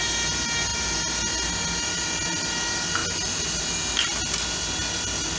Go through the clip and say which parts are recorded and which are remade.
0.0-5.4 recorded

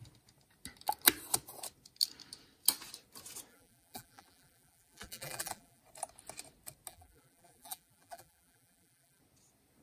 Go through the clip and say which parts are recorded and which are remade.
0.0-3.5 recorded; 3.5-5.8 remade; 5.8-6.9 recorded; 6.9-9.2 remade; 9.2-9.8 recorded

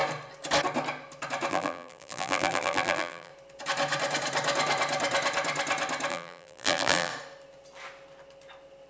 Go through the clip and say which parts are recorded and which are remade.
0.0-1.5 recorded; 1.5-3.3 remade; 3.3-6.1 recorded; 6.1-7.1 remade; 7.1-8.9 recorded